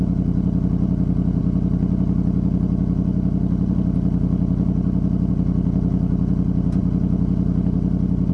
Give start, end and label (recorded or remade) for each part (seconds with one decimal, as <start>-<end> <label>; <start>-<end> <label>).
0.0-8.3 recorded